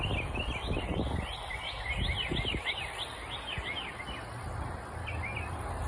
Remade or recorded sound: recorded